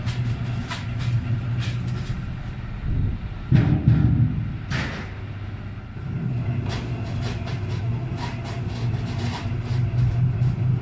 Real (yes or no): yes